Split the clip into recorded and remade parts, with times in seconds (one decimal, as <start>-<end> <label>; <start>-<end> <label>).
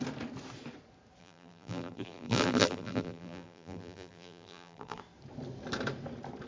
0.0-1.2 recorded; 1.2-5.0 remade; 5.0-6.5 recorded